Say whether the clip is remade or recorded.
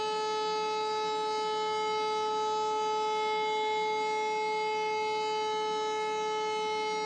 recorded